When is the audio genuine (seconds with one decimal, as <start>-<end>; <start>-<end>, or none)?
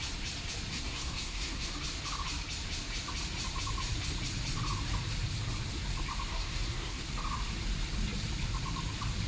0.0-0.7; 1.7-6.3; 7.0-9.3